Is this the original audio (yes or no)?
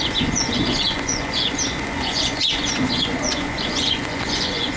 no